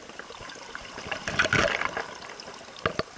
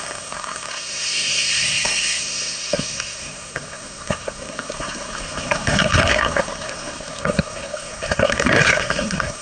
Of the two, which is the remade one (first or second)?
second